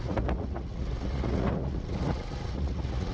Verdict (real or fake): fake